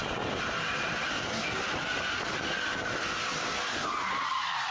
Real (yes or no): yes